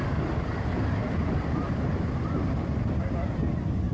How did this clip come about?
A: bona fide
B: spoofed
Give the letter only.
B